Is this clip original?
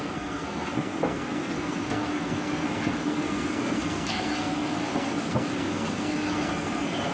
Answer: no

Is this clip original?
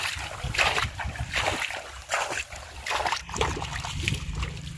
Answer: no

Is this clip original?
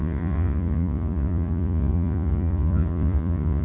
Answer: no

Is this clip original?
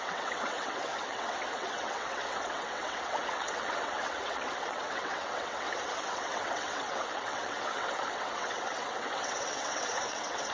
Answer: no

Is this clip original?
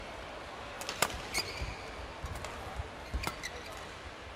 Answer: yes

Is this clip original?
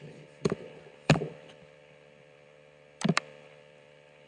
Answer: no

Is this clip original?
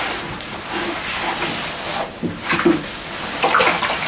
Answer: yes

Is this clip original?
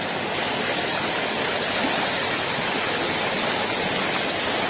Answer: yes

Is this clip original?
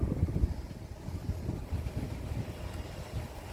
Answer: yes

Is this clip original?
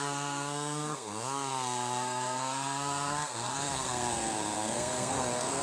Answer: no